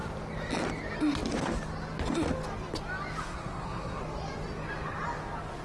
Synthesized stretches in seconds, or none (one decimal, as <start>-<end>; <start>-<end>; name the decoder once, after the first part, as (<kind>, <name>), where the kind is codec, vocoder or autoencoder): 3.2-4.0 (codec, SNAC)